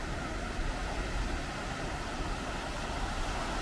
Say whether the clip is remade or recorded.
recorded